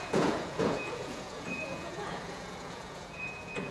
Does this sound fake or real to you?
fake